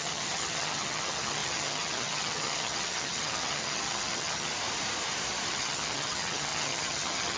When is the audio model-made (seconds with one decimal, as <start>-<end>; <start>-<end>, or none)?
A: 0.0-4.5; 5.5-7.4

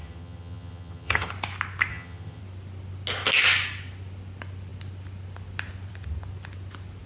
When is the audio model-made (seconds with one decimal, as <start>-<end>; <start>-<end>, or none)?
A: 0.0-1.3; 1.9-2.4